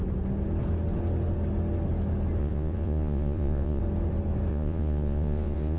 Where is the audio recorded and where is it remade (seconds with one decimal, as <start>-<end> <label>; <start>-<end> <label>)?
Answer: 0.0-2.4 recorded; 2.4-3.8 remade; 3.8-4.5 recorded; 4.5-5.8 remade